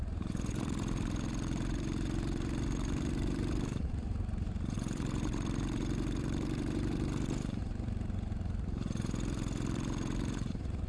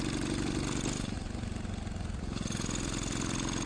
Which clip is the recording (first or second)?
second